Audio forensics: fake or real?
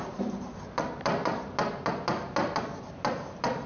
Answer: real